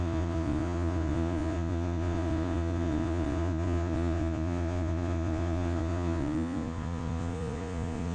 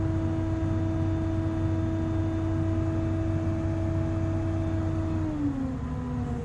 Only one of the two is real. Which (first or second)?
second